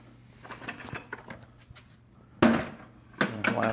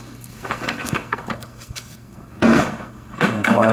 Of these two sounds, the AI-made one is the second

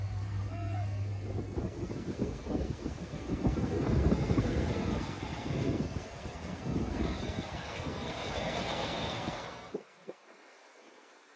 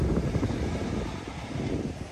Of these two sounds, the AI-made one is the first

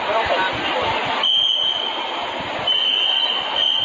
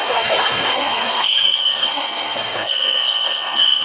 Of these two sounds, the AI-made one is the second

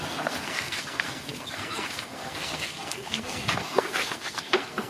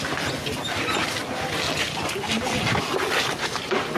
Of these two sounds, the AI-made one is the first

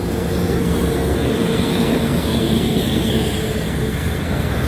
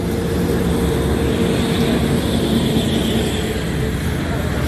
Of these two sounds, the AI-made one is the first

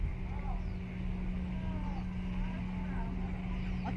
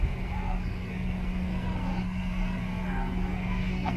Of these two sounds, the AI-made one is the second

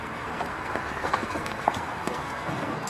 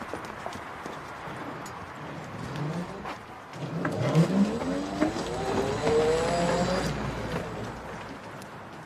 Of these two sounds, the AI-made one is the first